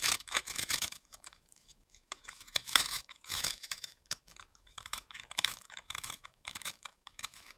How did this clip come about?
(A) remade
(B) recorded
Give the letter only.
A